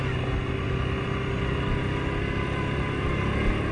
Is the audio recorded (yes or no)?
yes